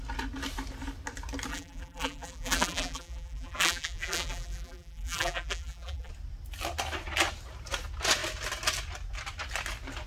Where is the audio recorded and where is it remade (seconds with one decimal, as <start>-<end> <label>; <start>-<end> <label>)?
0.0-1.5 recorded; 1.5-6.1 remade; 6.1-10.1 recorded